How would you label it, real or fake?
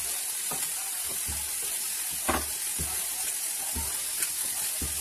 real